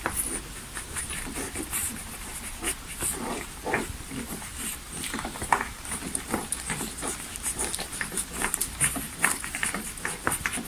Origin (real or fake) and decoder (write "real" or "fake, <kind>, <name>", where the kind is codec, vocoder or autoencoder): fake, vocoder, BigVGAN v2